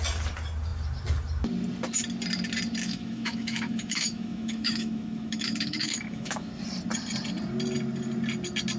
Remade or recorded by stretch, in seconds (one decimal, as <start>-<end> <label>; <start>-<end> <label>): 0.0-2.8 recorded; 2.8-6.5 remade; 6.5-8.8 recorded